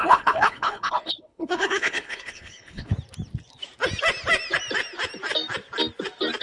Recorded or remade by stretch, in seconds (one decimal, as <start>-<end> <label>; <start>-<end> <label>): 0.0-2.9 remade; 2.9-6.4 recorded